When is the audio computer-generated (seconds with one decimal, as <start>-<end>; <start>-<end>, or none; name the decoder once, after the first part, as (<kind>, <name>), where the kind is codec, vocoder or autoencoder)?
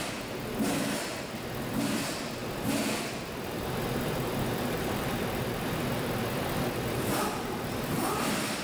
0.7-8.6 (vocoder, BigVGAN v2)